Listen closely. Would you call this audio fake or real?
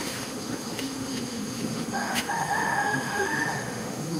fake